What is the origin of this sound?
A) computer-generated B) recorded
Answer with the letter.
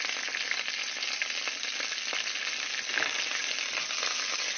B